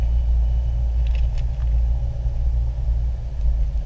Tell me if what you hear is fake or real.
real